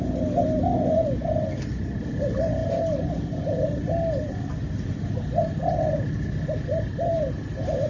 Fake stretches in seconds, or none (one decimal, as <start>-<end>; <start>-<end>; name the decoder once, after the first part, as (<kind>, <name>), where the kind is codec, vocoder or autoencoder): none